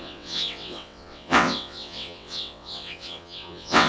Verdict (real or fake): fake